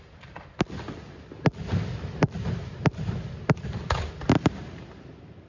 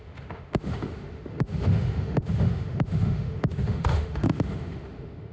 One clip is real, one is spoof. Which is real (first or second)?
first